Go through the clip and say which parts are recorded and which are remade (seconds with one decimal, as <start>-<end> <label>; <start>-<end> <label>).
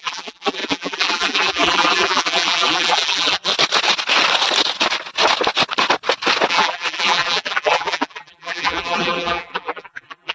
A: 0.0-3.5 remade; 3.5-6.5 recorded; 6.5-10.3 remade